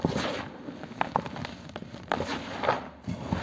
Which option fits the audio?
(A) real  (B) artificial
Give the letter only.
A